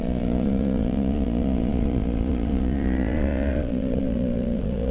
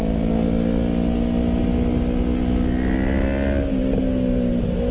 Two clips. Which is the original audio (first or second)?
second